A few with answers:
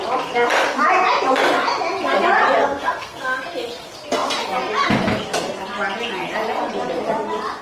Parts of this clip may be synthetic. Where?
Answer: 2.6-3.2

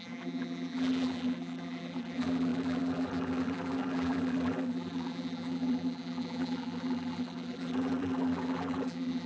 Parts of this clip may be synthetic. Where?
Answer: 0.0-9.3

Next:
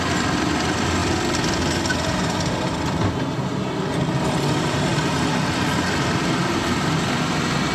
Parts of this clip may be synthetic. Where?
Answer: none

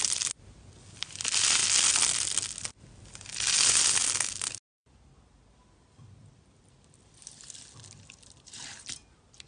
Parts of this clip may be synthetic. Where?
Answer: 0.0-1.6; 2.8-4.0; 5.5-9.5